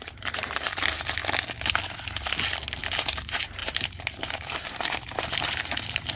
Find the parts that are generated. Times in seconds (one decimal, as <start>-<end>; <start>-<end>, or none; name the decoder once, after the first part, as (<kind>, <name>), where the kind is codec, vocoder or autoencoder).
0.0-1.2 (vocoder, BigVGAN v2); 3.0-6.2